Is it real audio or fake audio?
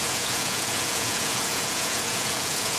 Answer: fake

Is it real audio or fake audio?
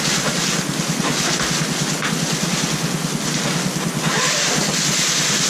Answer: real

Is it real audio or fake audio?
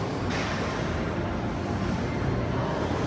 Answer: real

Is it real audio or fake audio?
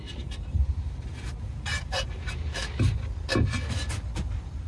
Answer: real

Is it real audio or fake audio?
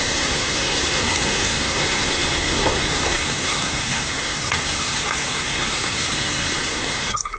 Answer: fake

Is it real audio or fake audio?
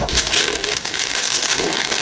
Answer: fake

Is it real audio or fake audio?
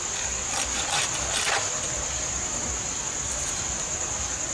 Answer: real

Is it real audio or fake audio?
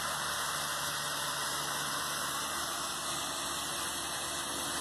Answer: real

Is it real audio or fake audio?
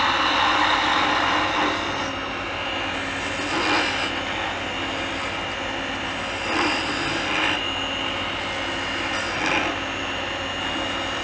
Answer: real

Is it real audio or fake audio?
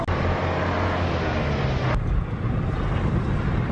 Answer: real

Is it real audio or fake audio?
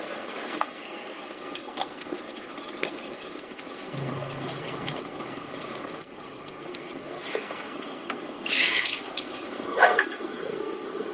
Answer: fake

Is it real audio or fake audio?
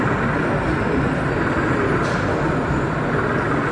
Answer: real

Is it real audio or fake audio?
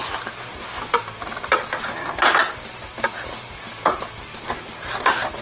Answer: real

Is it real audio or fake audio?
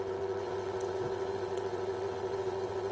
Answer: fake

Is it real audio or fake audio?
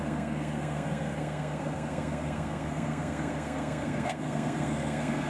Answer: fake